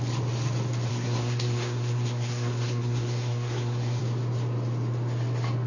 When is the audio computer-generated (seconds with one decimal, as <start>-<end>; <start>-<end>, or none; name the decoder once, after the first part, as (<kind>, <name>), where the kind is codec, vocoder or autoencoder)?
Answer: 0.9-4.0 (codec, SNAC)